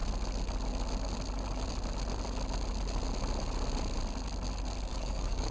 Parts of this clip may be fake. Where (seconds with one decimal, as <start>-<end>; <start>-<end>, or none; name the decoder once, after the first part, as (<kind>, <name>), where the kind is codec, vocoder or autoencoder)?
4.9-5.5 (codec, DAC)